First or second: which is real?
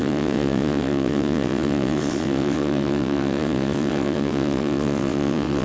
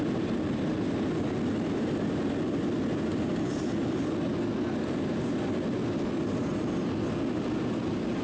second